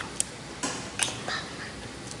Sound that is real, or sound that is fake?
real